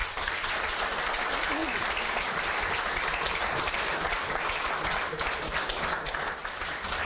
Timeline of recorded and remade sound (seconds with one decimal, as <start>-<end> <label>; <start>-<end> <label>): 0.0-0.7 remade; 0.7-3.4 recorded; 3.4-4.2 remade; 4.2-7.1 recorded

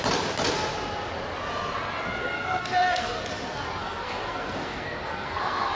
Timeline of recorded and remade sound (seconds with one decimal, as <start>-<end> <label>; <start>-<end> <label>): 0.0-2.2 recorded; 2.2-3.2 remade; 3.2-3.8 recorded; 3.8-5.7 remade

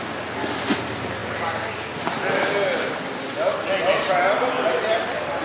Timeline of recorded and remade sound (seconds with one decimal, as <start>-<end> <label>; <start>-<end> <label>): 0.0-5.4 recorded

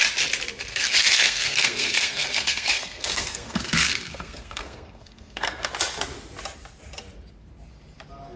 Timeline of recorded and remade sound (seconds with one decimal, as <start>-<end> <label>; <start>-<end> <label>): 0.0-0.7 recorded; 0.7-5.7 remade; 5.7-8.4 recorded

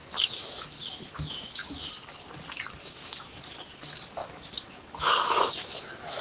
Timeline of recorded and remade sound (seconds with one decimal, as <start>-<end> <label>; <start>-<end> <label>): 0.0-1.9 remade; 1.9-2.8 recorded; 2.8-3.4 remade; 3.4-4.2 recorded; 4.2-6.2 remade